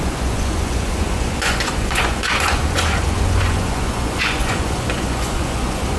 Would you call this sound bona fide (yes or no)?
no